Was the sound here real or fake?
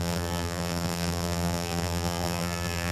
fake